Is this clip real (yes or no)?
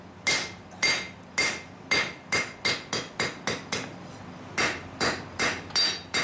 yes